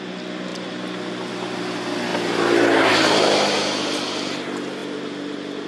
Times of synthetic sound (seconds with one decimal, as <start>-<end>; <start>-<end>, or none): none

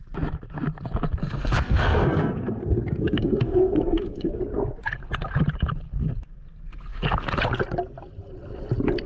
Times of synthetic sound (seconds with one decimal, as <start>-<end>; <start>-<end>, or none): 1.2-4.4

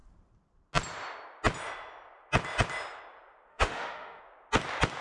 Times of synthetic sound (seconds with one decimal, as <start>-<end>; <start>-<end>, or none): 3.5-4.2

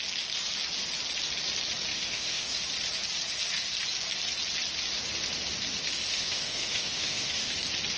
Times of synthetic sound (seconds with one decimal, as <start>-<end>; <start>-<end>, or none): 1.9-2.6; 6.1-7.5